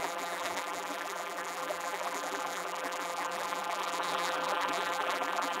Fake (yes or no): yes